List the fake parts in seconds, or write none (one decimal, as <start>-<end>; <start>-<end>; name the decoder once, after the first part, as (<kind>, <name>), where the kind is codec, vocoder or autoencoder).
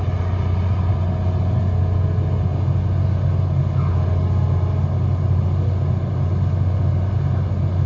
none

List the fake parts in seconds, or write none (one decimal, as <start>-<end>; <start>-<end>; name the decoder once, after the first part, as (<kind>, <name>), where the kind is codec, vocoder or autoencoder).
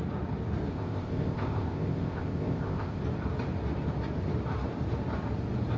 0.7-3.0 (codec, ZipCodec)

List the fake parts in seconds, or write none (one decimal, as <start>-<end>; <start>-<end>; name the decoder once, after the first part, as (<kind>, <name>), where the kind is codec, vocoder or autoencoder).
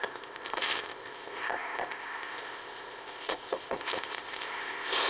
0.0-5.1 (codec, ZipCodec)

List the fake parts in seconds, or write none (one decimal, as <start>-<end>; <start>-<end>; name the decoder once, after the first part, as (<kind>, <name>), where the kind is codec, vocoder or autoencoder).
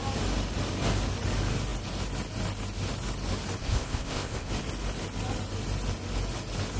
3.6-4.5 (codec, ZipCodec)